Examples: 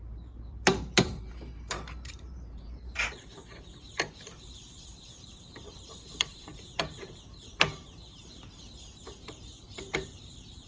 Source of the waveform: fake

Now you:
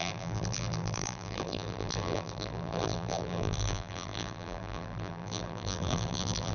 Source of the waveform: fake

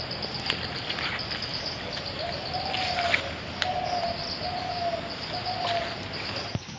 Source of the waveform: fake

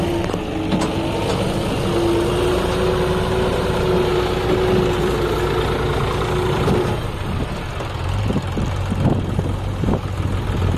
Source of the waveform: real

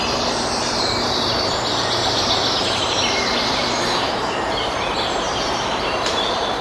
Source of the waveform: fake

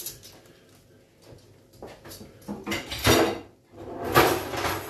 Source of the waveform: real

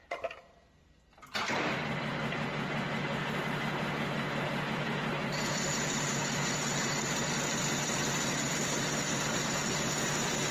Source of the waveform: real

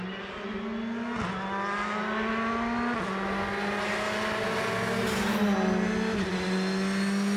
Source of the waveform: real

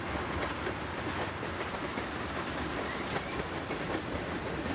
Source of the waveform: real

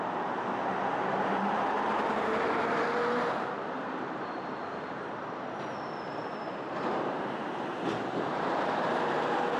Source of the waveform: fake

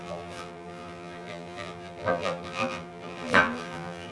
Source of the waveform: fake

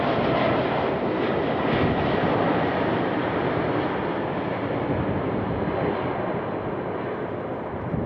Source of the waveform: fake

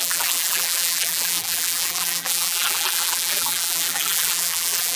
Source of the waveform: fake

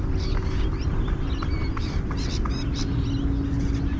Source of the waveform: real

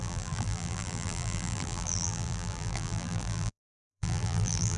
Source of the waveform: fake